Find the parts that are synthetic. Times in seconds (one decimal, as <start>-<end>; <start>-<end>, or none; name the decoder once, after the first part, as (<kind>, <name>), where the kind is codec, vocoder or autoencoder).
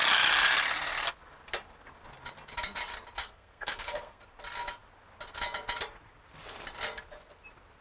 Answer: 3.2-4.2 (codec, SNAC)